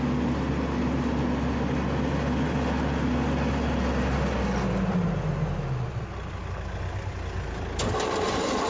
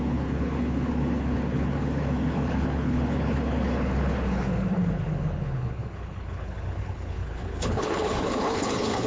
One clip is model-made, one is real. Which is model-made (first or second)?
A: second